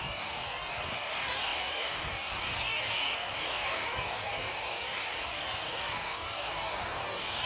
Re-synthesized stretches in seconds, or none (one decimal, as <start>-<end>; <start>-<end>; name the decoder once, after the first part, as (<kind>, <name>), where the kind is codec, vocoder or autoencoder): 0.0-7.5 (codec, DAC)